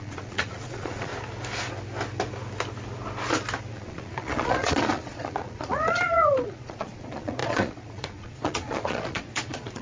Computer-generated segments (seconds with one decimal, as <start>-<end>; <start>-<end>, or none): 0.0-1.1; 3.7-9.8